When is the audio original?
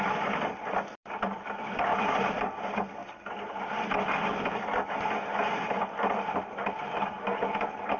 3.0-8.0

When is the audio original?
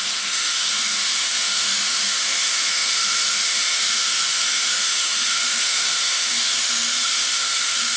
none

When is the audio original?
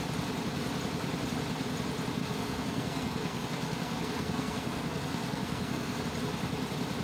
0.0-2.2; 6.0-7.0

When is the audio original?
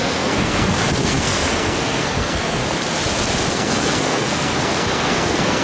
2.6-3.5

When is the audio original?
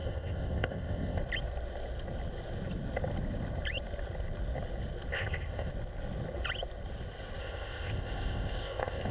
1.2-5.1; 5.7-7.4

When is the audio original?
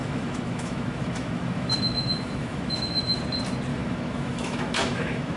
3.2-3.7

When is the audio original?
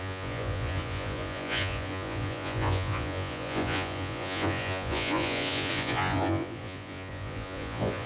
none